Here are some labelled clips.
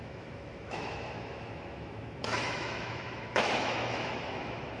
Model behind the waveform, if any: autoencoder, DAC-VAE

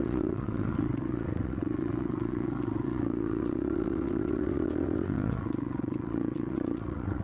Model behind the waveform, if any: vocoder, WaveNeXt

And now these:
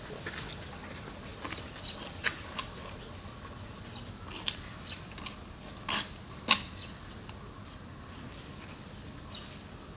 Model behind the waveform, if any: none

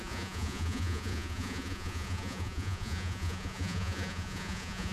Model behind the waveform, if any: vocoder, Vocos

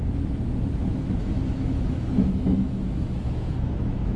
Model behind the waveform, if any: autoencoder, DAC-VAE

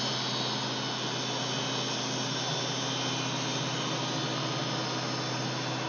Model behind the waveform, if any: none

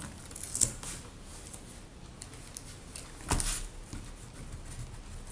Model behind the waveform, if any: none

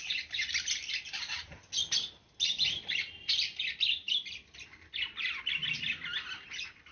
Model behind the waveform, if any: none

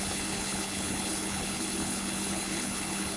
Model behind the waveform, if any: codec, HILCodec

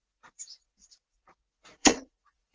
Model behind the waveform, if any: vocoder, Vocos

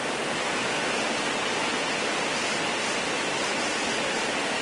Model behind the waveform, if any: none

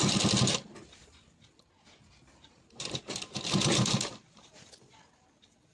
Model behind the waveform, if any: vocoder, BigVGAN v2